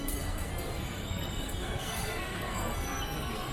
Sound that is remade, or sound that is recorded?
remade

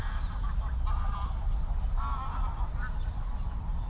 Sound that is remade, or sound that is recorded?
recorded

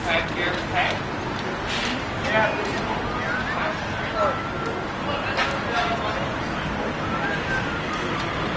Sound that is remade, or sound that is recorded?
recorded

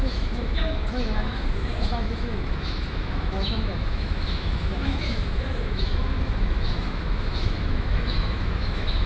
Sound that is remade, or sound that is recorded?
remade